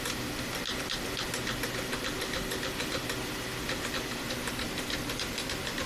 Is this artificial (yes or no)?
no